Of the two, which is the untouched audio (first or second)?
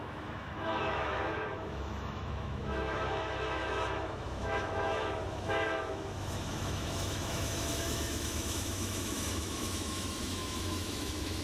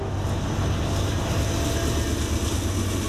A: second